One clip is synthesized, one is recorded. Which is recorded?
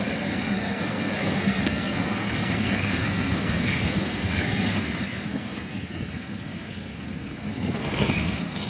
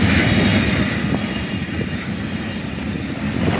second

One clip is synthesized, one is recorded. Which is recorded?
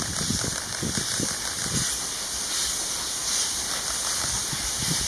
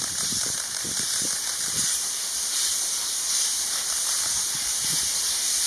first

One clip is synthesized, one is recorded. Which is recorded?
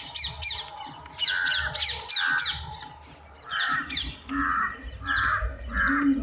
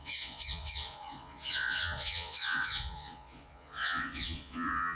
first